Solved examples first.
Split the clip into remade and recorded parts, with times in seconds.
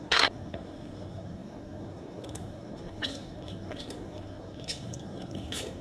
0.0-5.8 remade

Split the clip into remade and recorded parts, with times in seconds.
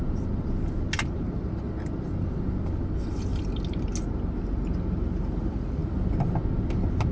0.0-7.1 recorded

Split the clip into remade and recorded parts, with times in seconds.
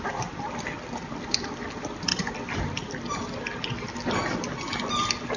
0.0-5.4 recorded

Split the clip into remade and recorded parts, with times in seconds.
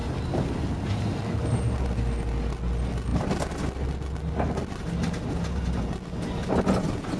0.0-7.2 recorded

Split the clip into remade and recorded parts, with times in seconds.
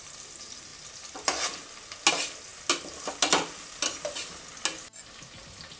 0.0-5.8 recorded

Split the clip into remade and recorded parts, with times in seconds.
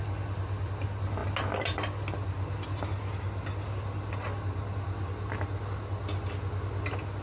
0.0-7.2 recorded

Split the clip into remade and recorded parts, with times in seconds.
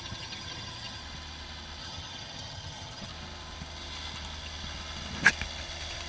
0.0-1.0 remade; 1.0-1.8 recorded; 1.8-3.1 remade; 3.1-6.1 recorded